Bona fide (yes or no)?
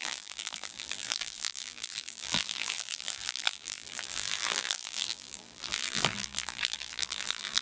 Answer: no